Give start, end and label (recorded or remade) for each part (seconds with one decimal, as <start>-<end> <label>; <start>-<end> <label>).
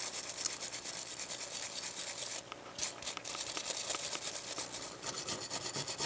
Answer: 0.0-6.1 recorded